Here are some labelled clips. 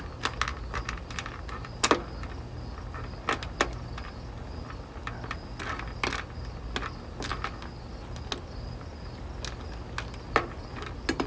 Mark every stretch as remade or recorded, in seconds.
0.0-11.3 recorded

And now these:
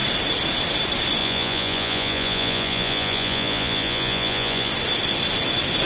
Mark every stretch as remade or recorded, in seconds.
0.0-1.2 recorded; 1.2-4.7 remade; 4.7-5.9 recorded

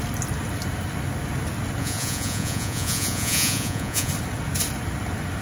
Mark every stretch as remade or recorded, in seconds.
0.0-1.8 recorded; 1.8-4.1 remade; 4.1-5.4 recorded

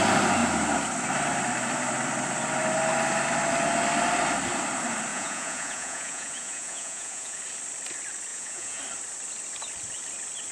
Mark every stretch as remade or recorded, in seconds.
0.0-5.1 recorded; 5.1-7.4 remade; 7.4-8.3 recorded; 8.3-8.8 remade; 8.8-10.5 recorded

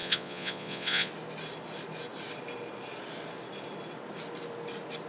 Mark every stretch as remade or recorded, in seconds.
0.0-1.1 remade; 1.1-5.1 recorded

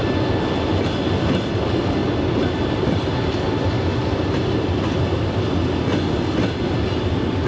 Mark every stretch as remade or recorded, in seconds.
0.0-7.5 recorded